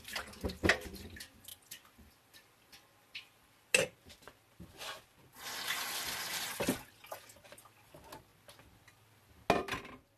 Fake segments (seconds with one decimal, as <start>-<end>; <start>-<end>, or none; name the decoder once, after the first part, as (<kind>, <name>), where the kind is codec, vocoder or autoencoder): none